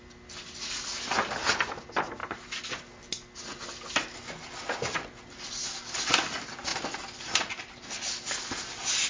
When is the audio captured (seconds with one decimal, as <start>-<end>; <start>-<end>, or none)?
0.0-9.1